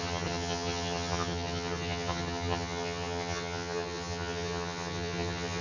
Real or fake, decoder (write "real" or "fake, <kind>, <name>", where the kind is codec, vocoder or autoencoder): fake, vocoder, HiFi-GAN